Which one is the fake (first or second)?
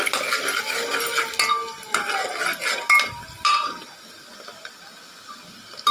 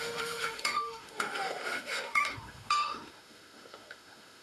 second